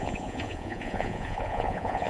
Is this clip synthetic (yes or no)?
yes